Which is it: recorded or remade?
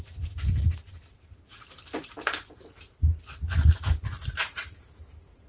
recorded